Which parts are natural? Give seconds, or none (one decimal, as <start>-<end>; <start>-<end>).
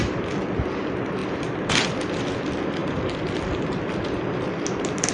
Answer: 0.0-5.1